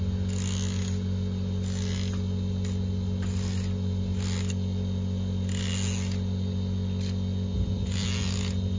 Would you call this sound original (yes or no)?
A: yes